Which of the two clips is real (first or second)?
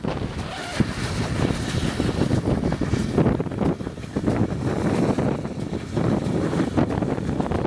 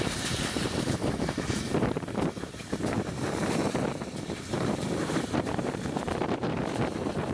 first